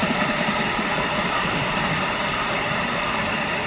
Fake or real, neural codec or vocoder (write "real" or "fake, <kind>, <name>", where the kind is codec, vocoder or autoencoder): fake, vocoder, BigVGAN v2